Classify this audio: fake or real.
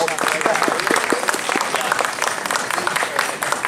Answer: real